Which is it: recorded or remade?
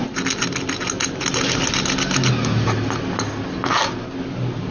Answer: recorded